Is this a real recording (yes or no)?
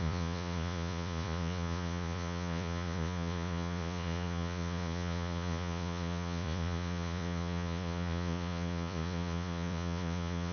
no